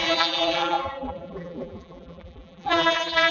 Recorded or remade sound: remade